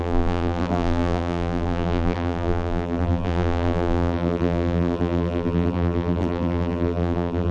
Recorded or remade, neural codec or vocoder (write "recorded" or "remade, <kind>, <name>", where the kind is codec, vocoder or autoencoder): remade, vocoder, BigVGAN v2